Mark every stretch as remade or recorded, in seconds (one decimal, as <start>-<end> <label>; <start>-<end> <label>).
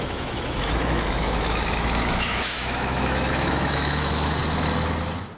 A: 0.0-4.4 remade; 4.4-5.4 recorded